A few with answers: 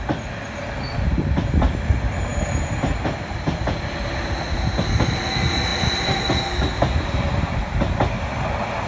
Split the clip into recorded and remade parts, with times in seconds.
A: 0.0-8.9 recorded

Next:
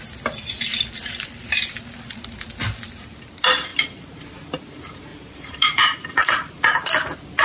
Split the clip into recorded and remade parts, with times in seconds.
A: 0.0-5.1 recorded; 5.1-6.5 remade; 6.5-7.4 recorded

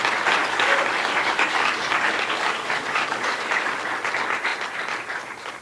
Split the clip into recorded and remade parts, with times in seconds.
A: 0.0-0.4 recorded; 0.4-3.8 remade; 3.8-5.6 recorded

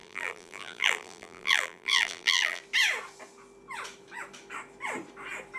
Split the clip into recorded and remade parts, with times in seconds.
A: 0.0-2.6 remade; 2.6-5.6 recorded

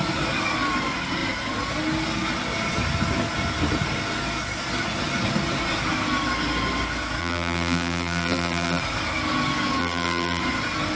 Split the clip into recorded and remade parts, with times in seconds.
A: 0.0-7.2 recorded; 7.2-8.8 remade; 8.8-9.8 recorded; 9.8-10.4 remade; 10.4-11.0 recorded